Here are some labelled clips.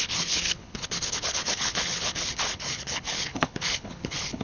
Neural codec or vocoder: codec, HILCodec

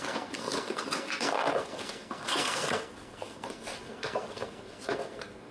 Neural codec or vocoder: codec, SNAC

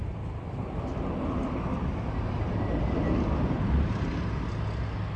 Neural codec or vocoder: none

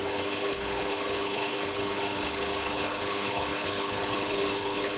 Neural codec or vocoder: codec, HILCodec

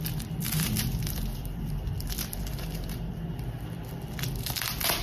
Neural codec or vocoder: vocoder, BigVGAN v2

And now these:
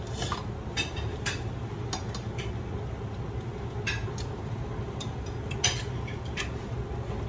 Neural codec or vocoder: none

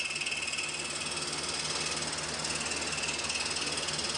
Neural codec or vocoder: none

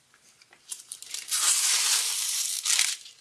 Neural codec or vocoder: vocoder, BigVGAN v2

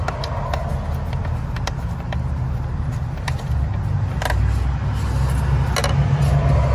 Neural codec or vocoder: none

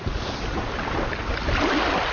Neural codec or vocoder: none